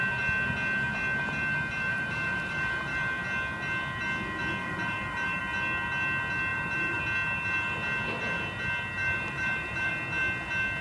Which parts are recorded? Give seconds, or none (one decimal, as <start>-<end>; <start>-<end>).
0.0-1.9; 3.2-4.6; 5.4-6.5; 7.0-9.0; 9.9-10.8